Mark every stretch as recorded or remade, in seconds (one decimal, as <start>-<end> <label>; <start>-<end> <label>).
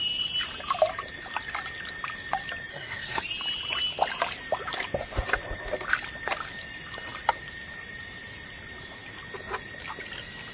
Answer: 0.0-2.7 recorded; 2.7-3.2 remade; 3.2-10.5 recorded